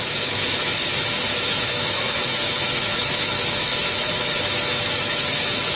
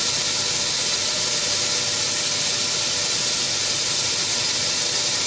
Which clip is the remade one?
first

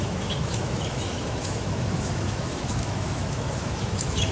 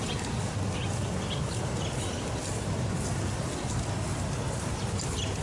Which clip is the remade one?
first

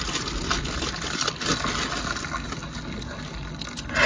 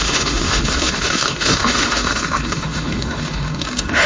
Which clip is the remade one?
second